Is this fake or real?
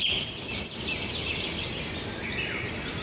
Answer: real